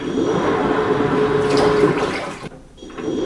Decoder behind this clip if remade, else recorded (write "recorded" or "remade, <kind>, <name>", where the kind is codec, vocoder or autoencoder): recorded